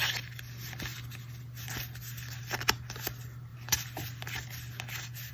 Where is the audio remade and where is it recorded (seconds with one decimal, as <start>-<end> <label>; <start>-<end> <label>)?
0.0-5.3 recorded